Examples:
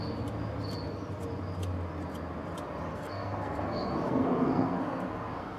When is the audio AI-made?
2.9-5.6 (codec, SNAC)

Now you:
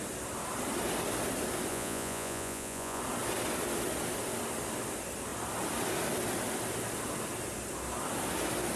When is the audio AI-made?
1.7-3.0 (vocoder, Vocos)

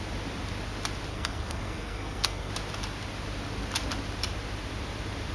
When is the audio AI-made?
1.1-2.5 (codec, SNAC)

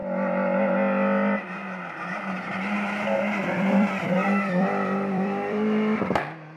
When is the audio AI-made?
3.4-6.6 (vocoder, BigVGAN v2)

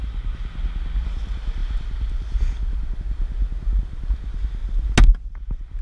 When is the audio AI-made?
none

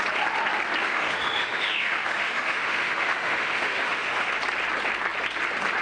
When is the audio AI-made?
0.8-4.3 (autoencoder, DAC-VAE)